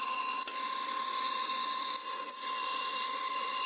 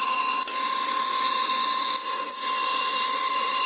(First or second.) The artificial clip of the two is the first